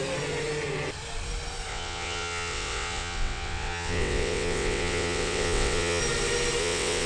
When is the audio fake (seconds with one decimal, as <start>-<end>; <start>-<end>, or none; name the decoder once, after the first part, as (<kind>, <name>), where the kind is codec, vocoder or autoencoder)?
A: 1.7-6.0 (vocoder, WaveNeXt); 6.6-7.1